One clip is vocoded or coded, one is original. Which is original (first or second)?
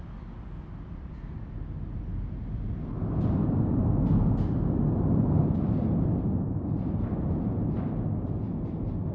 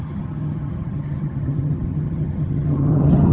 first